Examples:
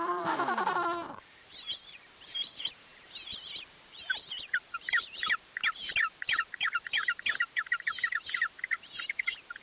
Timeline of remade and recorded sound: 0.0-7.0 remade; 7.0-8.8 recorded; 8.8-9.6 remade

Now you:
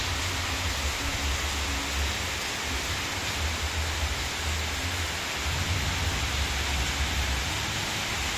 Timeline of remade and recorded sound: 0.0-8.4 recorded

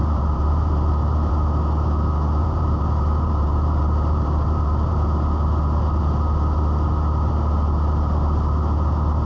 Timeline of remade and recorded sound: 0.0-1.3 remade; 1.3-2.4 recorded; 2.4-4.9 remade; 4.9-9.3 recorded

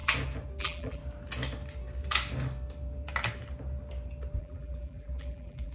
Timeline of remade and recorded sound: 0.0-0.6 recorded; 0.6-1.0 remade; 1.0-4.4 recorded; 4.4-5.7 remade

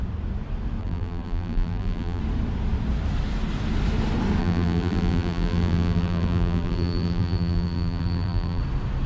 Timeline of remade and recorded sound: 0.0-0.8 recorded; 0.8-2.2 remade; 2.2-4.4 recorded; 4.4-8.6 remade; 8.6-9.1 recorded